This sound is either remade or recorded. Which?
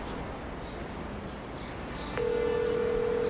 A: recorded